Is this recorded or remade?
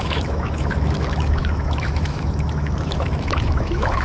remade